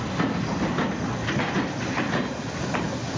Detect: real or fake real